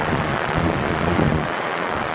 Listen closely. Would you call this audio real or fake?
fake